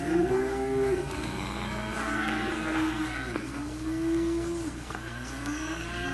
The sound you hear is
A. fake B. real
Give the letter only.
A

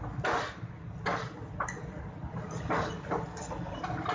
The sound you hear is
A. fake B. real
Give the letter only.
B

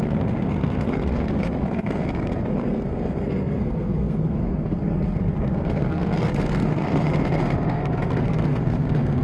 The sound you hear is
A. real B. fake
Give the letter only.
B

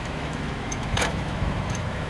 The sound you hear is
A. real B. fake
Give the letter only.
B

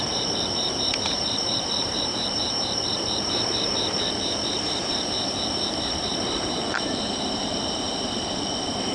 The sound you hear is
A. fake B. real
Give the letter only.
A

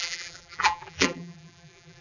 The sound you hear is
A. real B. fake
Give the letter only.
B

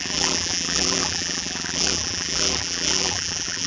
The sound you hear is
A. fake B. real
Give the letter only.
A